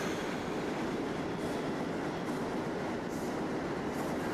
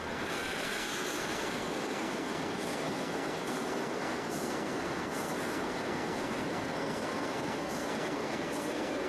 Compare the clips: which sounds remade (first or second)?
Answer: second